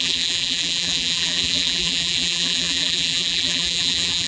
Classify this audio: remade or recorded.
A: remade